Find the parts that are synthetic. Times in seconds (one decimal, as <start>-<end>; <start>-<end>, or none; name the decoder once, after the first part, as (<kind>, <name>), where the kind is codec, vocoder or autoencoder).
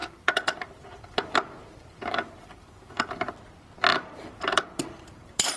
0.0-3.3 (vocoder, BigVGAN v2); 3.9-5.6